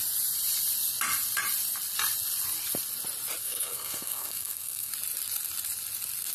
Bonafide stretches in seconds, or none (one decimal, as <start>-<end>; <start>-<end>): 0.0-3.4; 4.9-6.3